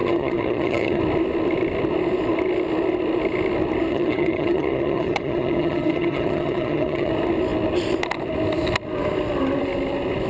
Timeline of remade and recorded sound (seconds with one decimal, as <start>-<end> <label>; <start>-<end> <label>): 0.0-1.0 remade; 1.0-3.9 recorded; 3.9-7.1 remade; 7.1-10.3 recorded